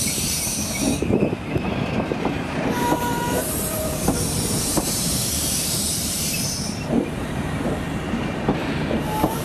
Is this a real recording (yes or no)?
no